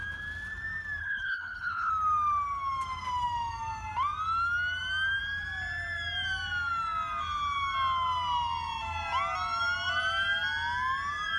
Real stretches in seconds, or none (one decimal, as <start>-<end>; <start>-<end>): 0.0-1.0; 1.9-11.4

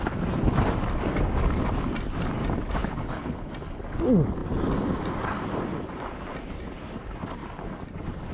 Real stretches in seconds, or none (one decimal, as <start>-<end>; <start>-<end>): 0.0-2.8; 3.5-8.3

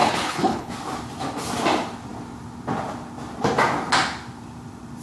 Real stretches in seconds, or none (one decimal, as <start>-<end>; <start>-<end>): 0.7-5.0

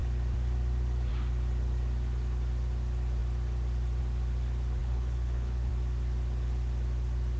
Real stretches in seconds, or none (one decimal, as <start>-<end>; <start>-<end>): 0.0-4.8; 5.7-7.4

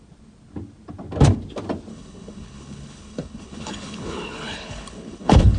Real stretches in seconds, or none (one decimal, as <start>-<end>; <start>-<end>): 0.0-1.9